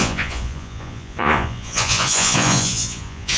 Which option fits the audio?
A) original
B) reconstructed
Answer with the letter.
B